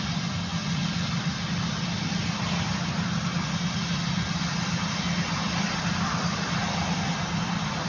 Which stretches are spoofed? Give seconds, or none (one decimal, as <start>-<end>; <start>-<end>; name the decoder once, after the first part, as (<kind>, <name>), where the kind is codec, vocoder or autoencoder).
none